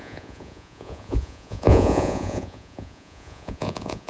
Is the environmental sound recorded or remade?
remade